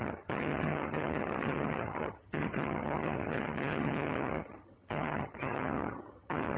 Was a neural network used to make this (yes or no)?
yes